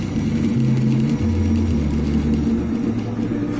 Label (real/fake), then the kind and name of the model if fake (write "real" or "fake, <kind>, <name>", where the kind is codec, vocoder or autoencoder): real